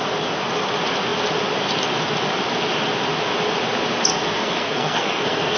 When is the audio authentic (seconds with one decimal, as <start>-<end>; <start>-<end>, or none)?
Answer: 0.0-4.1

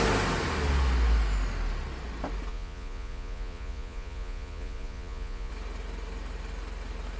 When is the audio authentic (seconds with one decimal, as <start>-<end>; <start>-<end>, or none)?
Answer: 0.0-2.5; 5.5-7.2

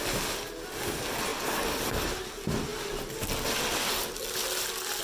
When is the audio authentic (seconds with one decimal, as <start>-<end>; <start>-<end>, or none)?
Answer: 0.0-5.0